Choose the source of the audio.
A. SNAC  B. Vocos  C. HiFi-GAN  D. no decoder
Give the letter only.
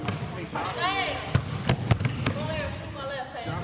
D